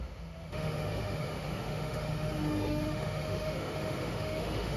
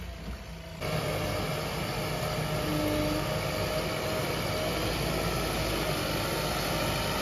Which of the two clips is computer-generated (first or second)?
first